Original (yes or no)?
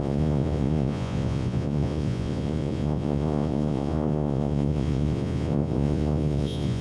no